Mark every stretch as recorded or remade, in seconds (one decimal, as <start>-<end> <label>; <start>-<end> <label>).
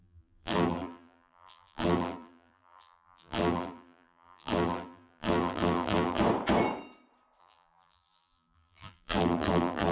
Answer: 0.0-6.2 remade; 6.2-7.4 recorded; 7.4-9.9 remade